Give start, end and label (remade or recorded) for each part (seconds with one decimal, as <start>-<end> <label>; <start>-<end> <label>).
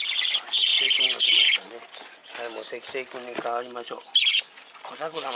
0.0-0.7 remade; 0.7-1.2 recorded; 1.2-2.2 remade; 2.2-4.3 recorded; 4.3-5.3 remade